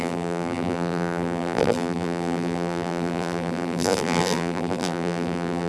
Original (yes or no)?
no